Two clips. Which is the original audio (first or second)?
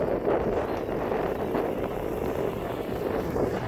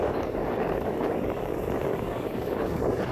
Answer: first